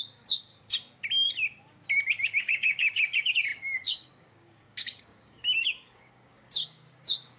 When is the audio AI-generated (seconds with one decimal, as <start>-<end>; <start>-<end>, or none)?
0.0-0.5; 2.1-7.4